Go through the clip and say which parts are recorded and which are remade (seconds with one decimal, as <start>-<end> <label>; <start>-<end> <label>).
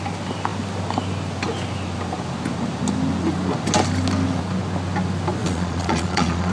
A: 0.0-5.4 recorded; 5.4-6.5 remade